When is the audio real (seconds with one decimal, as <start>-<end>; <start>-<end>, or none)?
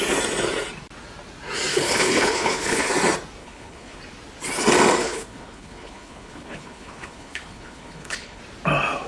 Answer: 0.0-1.7; 2.9-3.4; 4.0-5.0; 8.4-9.1